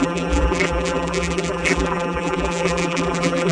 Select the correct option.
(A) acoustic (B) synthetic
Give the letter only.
B